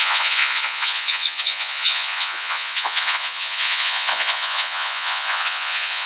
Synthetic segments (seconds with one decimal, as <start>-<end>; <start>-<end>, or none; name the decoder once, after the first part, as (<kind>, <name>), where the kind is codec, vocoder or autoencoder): 0.0-6.1 (vocoder, Vocos)